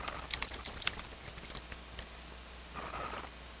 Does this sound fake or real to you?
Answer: real